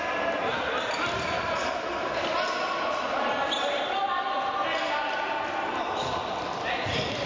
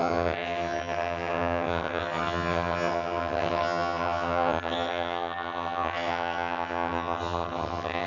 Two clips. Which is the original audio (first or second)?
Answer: first